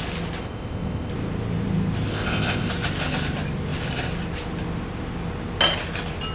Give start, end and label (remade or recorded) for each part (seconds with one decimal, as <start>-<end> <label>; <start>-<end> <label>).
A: 0.0-0.4 recorded; 0.4-1.1 remade; 1.1-2.1 recorded; 2.1-2.7 remade; 2.7-6.3 recorded